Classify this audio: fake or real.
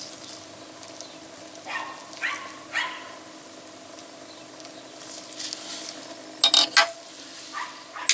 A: real